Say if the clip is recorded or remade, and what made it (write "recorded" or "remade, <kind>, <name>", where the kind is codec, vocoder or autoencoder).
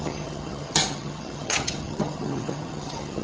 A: remade, vocoder, HiFi-GAN